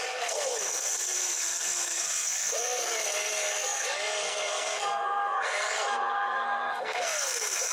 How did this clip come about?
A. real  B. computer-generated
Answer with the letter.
B